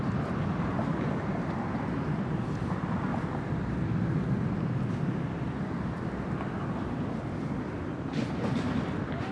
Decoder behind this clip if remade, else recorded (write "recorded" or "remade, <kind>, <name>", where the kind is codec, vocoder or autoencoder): recorded